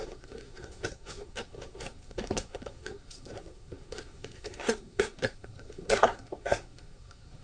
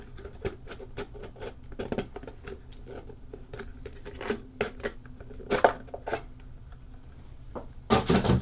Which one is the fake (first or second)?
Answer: first